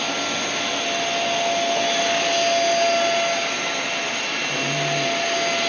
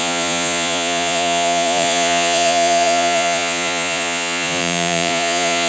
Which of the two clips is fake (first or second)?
second